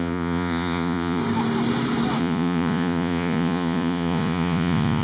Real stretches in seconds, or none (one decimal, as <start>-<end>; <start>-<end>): 1.2-2.2